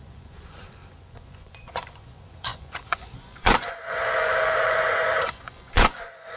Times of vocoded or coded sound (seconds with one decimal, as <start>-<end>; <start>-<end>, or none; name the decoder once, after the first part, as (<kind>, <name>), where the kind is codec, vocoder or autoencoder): 0.0-6.4 (vocoder, Vocos)